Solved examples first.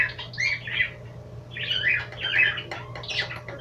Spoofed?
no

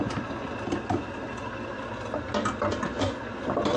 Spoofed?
no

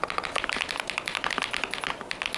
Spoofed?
no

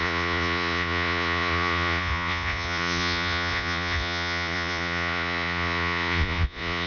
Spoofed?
yes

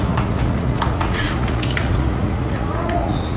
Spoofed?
yes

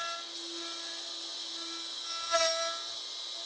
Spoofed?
no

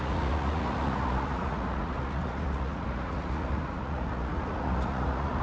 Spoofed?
yes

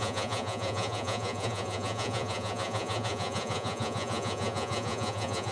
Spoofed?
yes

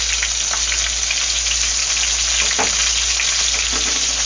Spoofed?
no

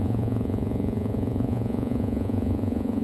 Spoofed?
yes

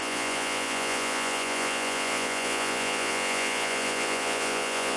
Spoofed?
yes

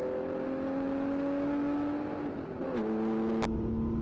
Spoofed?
no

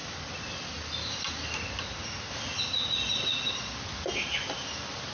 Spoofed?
no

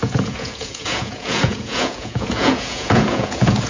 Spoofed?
yes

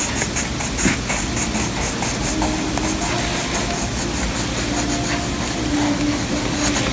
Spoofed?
no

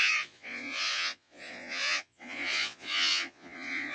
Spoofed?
yes